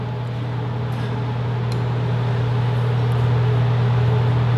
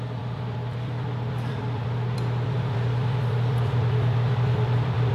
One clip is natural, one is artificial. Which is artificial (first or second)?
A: second